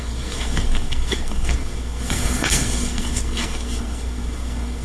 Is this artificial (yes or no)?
yes